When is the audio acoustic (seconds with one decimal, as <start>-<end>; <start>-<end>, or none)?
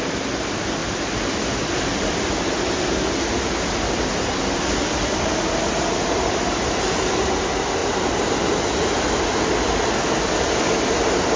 0.0-0.8; 2.9-11.4